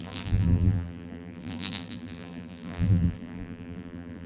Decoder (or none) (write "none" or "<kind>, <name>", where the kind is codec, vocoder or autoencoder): vocoder, BigVGAN v2